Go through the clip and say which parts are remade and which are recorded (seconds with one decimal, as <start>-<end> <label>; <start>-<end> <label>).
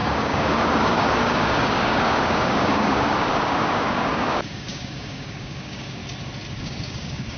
0.0-6.0 remade; 6.0-6.6 recorded; 6.6-7.4 remade